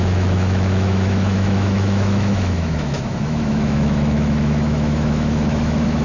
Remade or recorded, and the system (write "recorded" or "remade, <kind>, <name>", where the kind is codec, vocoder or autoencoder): remade, autoencoder, DAC-VAE